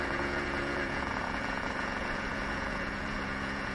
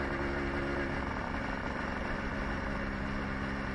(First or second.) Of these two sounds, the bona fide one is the second